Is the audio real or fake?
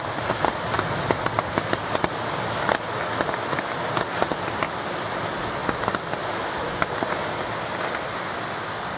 real